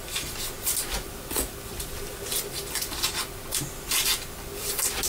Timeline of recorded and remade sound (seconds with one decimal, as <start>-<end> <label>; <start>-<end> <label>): 0.0-5.1 recorded